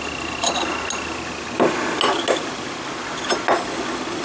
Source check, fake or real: real